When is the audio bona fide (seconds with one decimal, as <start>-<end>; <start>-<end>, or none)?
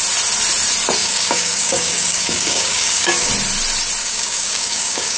0.0-1.0; 3.3-4.0